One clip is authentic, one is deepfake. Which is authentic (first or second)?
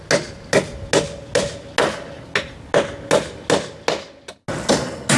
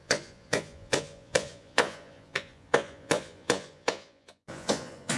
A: first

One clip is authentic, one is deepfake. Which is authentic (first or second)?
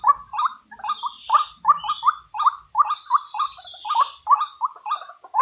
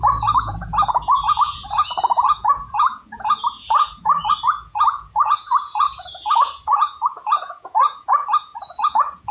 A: first